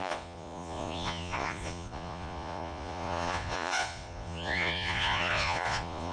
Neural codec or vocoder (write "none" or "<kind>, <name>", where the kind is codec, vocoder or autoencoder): vocoder, Vocos